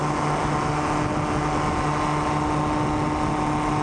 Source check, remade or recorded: recorded